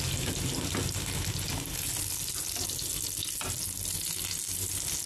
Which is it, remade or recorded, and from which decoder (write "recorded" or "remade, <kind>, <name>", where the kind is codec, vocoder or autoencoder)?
recorded